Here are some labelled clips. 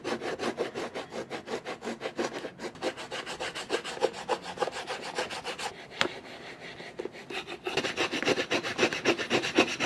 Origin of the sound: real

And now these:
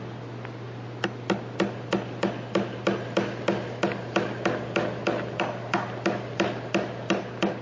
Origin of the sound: real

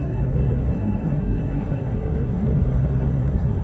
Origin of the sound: fake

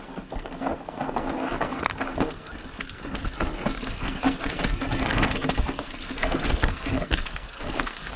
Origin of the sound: fake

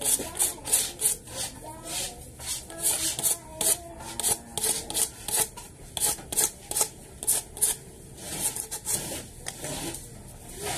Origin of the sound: real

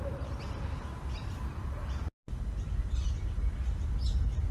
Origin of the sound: real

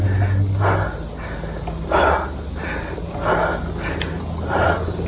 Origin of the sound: real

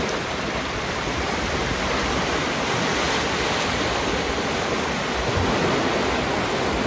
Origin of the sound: real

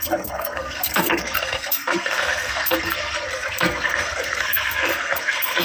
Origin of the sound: fake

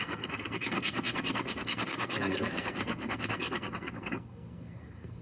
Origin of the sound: fake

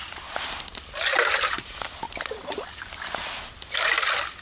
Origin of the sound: real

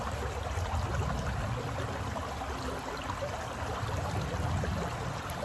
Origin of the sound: real